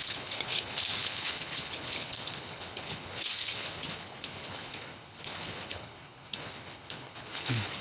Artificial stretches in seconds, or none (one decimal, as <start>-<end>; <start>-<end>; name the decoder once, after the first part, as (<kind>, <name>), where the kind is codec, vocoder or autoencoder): 0.0-7.8 (codec, HILCodec)